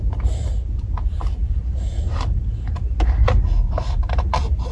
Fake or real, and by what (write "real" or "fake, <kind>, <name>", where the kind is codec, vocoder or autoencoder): real